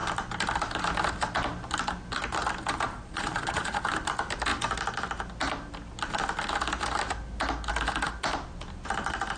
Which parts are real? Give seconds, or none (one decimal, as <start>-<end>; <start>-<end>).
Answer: 0.0-2.9; 3.8-9.4